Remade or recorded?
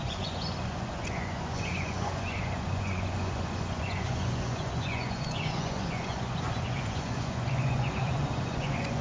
remade